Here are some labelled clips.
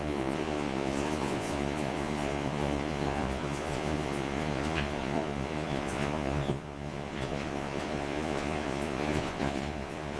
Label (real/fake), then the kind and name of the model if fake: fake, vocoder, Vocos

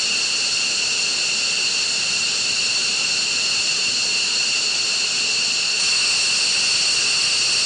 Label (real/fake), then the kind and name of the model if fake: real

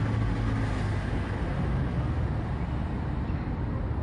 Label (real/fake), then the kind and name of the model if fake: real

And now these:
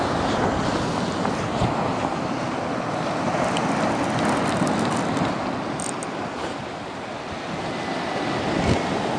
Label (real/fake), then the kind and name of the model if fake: real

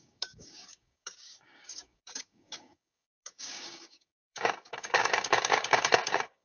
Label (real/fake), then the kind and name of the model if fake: fake, codec, DAC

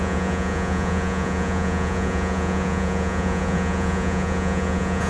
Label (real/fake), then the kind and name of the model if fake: fake, vocoder, Vocos